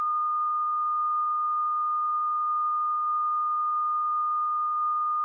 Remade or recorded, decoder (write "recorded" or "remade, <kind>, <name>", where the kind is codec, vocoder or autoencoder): remade, codec, SNAC